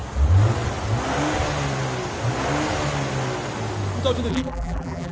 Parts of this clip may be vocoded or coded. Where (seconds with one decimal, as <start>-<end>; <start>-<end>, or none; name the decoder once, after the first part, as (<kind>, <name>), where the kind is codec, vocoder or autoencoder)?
4.3-5.1 (vocoder, BigVGAN v2)

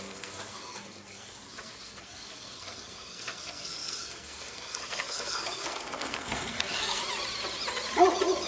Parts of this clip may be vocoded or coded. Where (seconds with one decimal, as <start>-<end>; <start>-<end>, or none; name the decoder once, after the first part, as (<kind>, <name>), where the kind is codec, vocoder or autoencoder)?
0.0-7.0 (codec, SNAC)

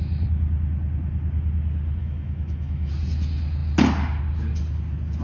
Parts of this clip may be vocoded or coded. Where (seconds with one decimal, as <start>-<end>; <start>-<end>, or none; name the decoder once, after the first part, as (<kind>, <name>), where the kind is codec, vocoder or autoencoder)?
2.0-2.9 (autoencoder, DAC-VAE)

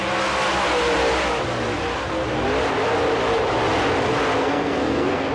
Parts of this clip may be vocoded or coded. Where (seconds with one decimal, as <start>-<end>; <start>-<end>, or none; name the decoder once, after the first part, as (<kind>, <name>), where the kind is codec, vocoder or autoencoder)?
4.4-5.3 (codec, SNAC)

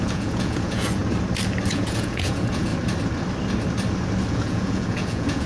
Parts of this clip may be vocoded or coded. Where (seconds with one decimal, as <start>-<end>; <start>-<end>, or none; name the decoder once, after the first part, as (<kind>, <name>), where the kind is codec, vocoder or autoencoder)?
0.0-1.0 (vocoder, Vocos); 1.7-2.7; 4.3-5.5

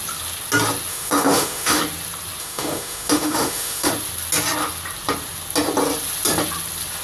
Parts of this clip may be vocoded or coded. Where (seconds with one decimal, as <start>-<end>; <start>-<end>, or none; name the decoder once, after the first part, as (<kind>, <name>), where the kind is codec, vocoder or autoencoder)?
0.9-1.8 (autoencoder, DAC-VAE); 2.4-3.9

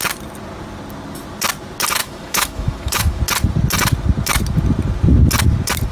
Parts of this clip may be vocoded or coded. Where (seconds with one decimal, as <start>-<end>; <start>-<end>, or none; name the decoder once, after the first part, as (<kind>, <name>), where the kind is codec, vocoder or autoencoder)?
2.0-3.2 (autoencoder, DAC-VAE)